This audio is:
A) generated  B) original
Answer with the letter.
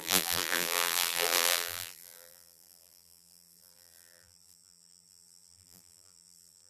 A